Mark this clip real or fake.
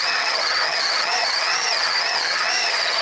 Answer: fake